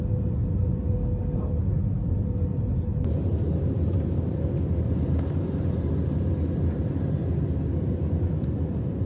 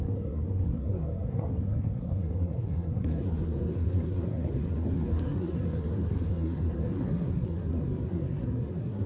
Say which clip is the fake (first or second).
second